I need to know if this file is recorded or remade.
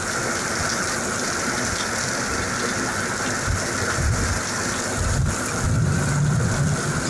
recorded